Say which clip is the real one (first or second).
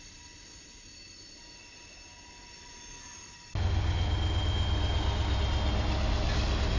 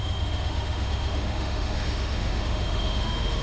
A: first